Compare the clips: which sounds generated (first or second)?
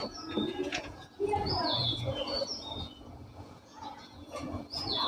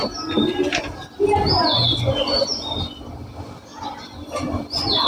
first